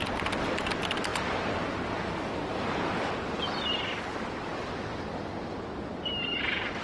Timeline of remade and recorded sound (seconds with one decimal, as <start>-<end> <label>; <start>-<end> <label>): 0.0-6.8 recorded